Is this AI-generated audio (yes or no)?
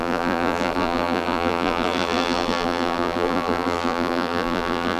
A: yes